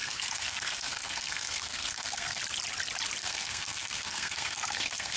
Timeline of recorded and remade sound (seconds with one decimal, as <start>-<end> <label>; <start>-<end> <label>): 0.0-2.4 remade; 2.4-3.2 recorded; 3.2-5.2 remade